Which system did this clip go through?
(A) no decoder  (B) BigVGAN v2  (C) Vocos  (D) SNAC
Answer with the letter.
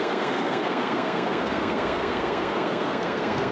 D